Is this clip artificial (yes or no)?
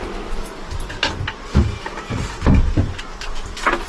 no